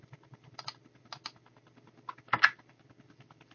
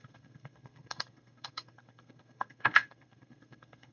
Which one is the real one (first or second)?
first